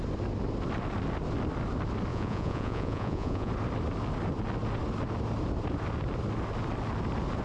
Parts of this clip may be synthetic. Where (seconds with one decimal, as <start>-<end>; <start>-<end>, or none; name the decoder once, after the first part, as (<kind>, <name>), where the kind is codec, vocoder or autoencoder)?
2.1-3.5 (vocoder, Vocos)